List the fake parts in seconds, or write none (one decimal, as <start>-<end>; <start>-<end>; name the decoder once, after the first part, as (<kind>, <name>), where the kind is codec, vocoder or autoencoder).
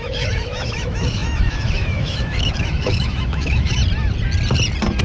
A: 0.0-3.8 (autoencoder, DAC-VAE)